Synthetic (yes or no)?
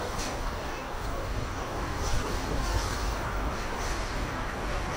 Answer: yes